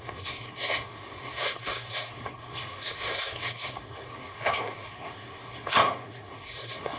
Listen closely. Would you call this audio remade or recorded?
remade